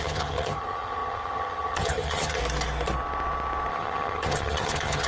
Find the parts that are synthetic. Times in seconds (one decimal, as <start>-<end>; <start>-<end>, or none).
0.0-2.4; 3.7-5.1

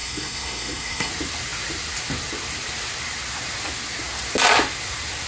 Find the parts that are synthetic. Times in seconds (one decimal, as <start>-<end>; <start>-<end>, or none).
0.0-1.1

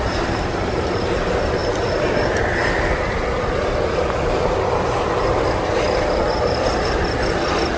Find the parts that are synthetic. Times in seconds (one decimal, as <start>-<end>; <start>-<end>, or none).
none

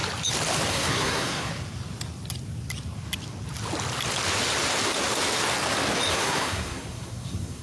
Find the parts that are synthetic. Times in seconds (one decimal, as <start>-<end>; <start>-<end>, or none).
0.7-1.5; 6.1-7.6

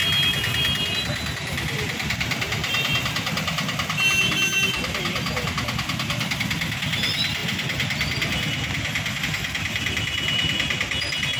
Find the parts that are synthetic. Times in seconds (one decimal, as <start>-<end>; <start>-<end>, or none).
none

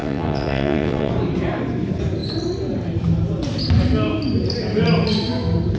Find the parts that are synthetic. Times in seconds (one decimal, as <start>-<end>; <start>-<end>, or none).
0.0-1.1

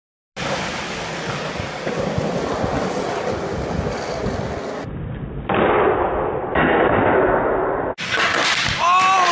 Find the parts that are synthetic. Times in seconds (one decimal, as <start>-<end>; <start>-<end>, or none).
none